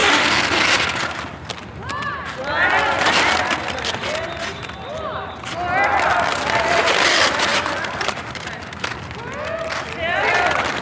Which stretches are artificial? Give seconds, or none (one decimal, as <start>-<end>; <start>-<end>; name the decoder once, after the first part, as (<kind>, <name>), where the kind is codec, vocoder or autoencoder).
7.5-8.7 (vocoder, BigVGAN v2)